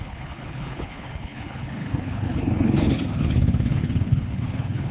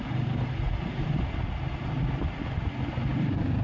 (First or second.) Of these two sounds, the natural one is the second